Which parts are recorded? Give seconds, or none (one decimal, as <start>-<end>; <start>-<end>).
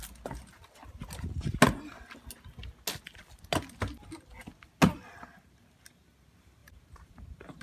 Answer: 0.0-6.6